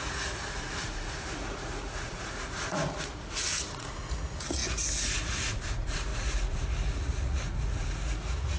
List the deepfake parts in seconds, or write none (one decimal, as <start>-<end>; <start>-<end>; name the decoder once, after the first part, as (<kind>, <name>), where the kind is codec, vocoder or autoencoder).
0.0-8.6 (vocoder, Vocos)